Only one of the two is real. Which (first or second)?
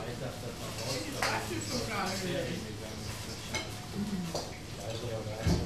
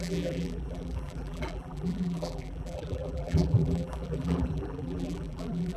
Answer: first